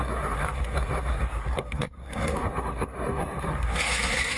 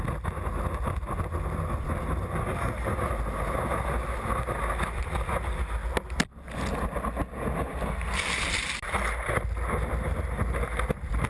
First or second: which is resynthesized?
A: first